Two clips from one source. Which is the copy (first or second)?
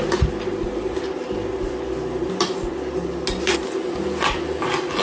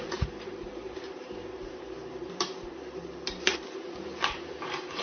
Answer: second